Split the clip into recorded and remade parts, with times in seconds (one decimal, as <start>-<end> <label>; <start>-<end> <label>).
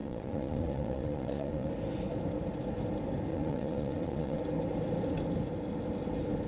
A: 0.0-1.7 remade; 1.7-3.3 recorded; 3.3-4.4 remade; 4.4-6.5 recorded